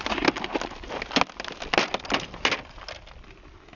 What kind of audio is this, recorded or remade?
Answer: recorded